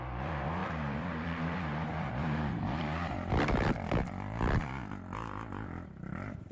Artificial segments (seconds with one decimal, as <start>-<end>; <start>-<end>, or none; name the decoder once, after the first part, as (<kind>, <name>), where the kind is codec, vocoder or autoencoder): 0.0-6.5 (vocoder, BigVGAN v2)